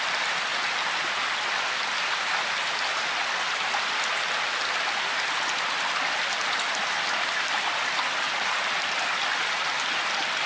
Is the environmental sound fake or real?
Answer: real